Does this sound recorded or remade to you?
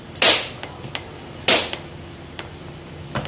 recorded